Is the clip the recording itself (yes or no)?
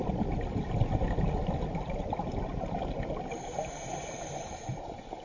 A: yes